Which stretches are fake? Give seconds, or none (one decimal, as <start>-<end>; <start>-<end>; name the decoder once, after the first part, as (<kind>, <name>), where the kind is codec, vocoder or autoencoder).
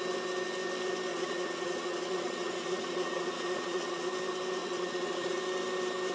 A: 1.1-4.1 (vocoder, Vocos); 4.6-5.4